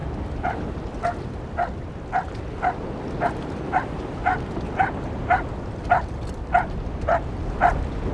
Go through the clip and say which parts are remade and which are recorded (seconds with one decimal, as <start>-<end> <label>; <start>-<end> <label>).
0.0-8.1 recorded